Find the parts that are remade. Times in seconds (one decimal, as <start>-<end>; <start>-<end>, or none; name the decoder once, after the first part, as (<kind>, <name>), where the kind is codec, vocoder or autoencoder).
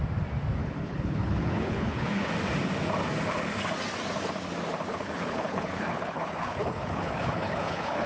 0.6-2.3 (codec, HILCodec); 4.9-8.1